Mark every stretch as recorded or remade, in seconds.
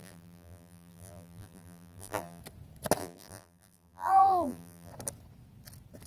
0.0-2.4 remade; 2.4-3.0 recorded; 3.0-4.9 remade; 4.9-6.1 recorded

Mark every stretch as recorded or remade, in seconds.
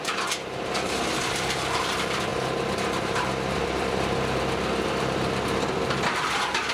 0.0-2.3 remade; 2.3-3.3 recorded; 3.3-6.7 remade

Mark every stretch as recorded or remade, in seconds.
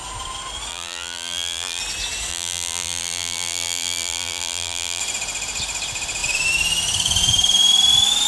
0.0-0.7 recorded; 0.7-1.8 remade; 1.8-2.3 recorded; 2.3-5.0 remade; 5.0-8.3 recorded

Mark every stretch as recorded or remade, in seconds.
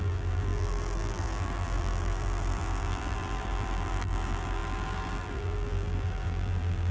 0.0-6.9 remade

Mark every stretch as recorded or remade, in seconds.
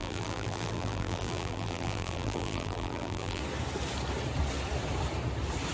0.0-3.4 remade; 3.4-5.7 recorded